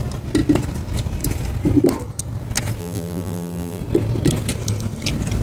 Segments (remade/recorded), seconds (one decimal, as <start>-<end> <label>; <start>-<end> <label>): 0.0-2.8 recorded; 2.8-3.8 remade; 3.8-5.4 recorded